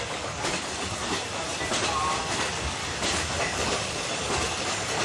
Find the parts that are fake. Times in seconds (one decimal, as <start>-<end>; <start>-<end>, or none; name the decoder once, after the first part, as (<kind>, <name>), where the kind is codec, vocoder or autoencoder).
0.0-1.0 (codec, DAC); 2.4-2.8; 3.4-5.0